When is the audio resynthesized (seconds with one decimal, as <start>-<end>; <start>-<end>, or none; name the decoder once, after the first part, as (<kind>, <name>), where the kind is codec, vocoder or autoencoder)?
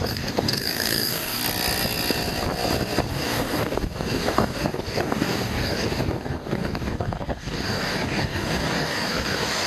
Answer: 0.0-1.4 (codec, DAC); 3.1-9.7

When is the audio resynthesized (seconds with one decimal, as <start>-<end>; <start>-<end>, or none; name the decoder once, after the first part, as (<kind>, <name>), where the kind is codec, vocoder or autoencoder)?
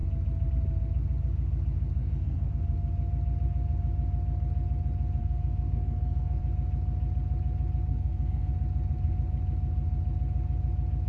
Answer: 2.0-2.5 (codec, SNAC); 5.2-6.4; 7.9-8.5